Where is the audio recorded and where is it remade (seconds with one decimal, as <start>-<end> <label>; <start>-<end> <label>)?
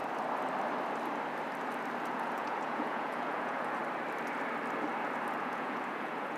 0.0-2.0 recorded; 2.0-3.8 remade; 3.8-5.4 recorded; 5.4-6.4 remade